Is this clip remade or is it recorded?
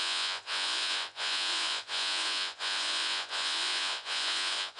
remade